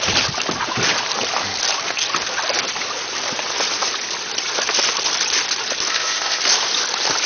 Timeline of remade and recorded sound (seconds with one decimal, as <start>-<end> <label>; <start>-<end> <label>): 0.0-5.9 recorded; 5.9-6.4 remade; 6.4-7.3 recorded